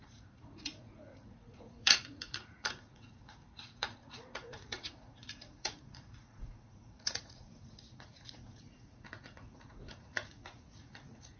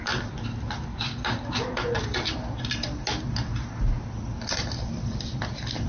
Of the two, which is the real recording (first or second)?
second